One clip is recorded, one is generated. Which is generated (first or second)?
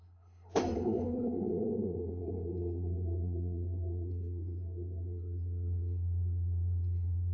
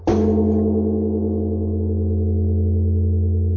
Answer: first